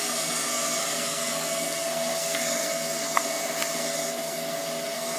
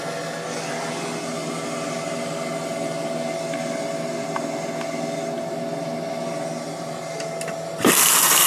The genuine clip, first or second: second